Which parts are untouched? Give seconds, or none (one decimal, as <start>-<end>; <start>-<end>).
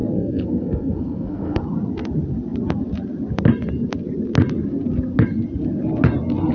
1.6-6.5